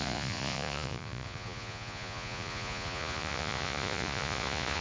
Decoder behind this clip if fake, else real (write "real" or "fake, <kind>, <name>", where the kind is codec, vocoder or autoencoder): fake, vocoder, Vocos